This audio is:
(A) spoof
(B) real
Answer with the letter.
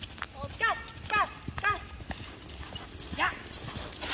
B